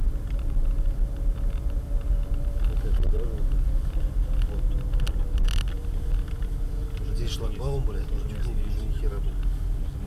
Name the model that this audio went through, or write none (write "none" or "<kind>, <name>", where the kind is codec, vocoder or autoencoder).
none